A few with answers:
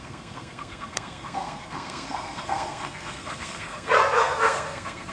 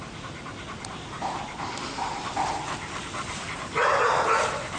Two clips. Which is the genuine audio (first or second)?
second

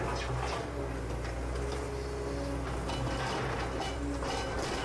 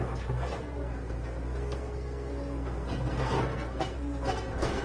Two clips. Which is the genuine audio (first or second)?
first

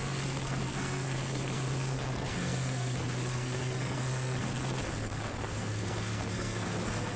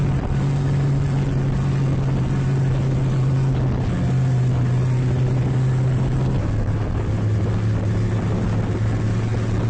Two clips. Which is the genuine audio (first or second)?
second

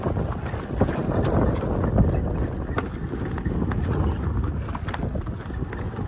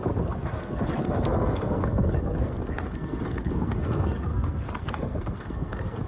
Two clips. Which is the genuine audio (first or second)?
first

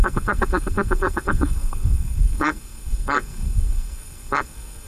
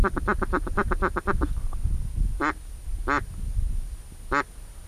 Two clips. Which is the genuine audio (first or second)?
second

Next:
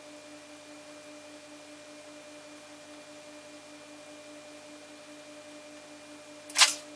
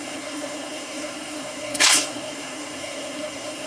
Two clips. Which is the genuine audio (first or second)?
first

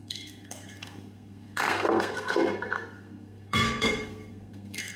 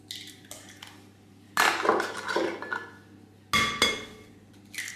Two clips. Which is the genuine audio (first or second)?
second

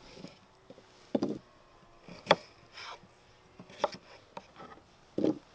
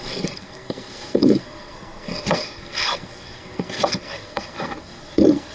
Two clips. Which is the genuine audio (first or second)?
first